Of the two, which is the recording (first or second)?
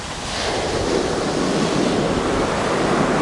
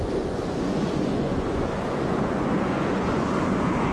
first